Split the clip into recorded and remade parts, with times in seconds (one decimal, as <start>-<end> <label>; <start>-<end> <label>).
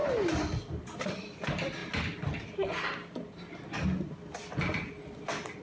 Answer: 0.0-5.6 recorded